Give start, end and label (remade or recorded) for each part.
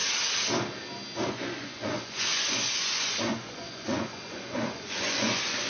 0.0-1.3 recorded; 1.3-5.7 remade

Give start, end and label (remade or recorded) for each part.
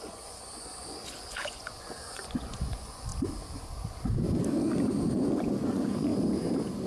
0.0-3.1 remade; 3.1-5.1 recorded; 5.1-6.1 remade; 6.1-6.9 recorded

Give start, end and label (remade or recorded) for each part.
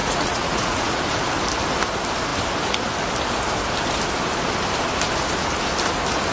0.0-1.0 remade; 1.0-6.3 recorded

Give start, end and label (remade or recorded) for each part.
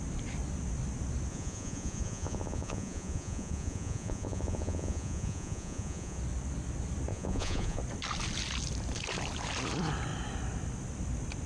0.0-1.3 recorded; 1.3-6.2 remade; 6.2-7.1 recorded; 7.1-7.8 remade; 7.8-11.5 recorded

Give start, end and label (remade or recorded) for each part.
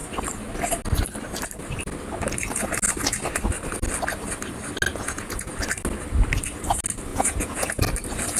0.0-4.9 recorded; 4.9-5.5 remade; 5.5-7.1 recorded; 7.1-7.8 remade; 7.8-8.4 recorded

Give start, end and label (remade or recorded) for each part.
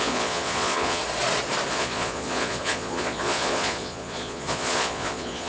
0.0-1.0 remade; 1.0-1.7 recorded; 1.7-5.5 remade